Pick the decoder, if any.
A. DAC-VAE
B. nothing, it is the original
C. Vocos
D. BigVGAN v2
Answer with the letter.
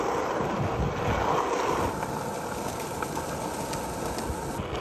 B